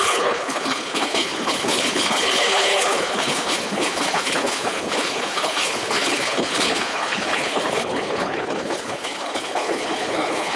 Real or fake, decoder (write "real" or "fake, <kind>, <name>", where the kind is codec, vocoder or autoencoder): fake, codec, HILCodec